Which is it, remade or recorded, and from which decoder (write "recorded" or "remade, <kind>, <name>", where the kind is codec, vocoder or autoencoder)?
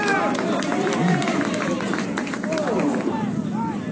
remade, vocoder, BigVGAN v2